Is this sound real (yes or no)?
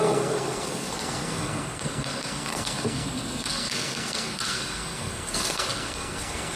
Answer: no